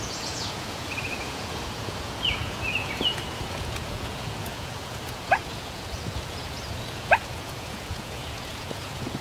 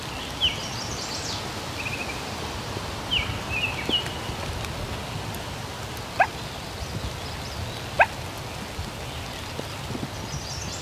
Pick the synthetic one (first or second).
first